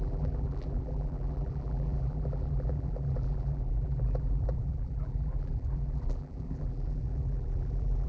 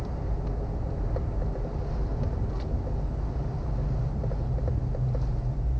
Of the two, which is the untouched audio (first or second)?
second